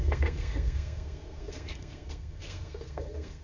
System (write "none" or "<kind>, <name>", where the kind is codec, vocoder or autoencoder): codec, SNAC